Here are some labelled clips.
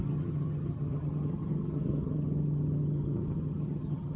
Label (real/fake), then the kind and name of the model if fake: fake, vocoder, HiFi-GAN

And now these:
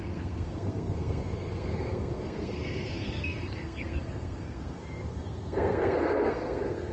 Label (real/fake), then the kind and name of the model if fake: fake, codec, SNAC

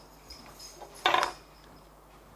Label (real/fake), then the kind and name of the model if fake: real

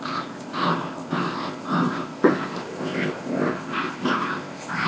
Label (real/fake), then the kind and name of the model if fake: fake, codec, ZipCodec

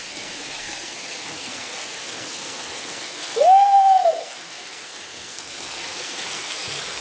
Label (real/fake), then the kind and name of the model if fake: fake, codec, SNAC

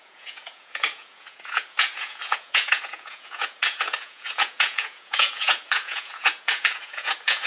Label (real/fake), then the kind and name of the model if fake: fake, vocoder, Vocos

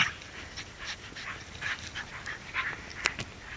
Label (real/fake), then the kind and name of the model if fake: real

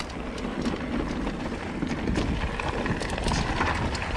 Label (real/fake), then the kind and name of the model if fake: real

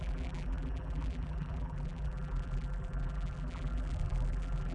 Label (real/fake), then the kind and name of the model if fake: fake, vocoder, BigVGAN v2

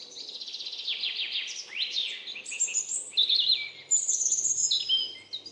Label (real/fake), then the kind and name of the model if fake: real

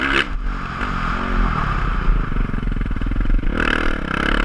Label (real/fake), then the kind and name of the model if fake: real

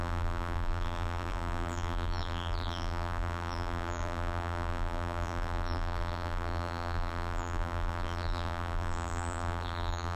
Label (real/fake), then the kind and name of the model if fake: fake, vocoder, BigVGAN v2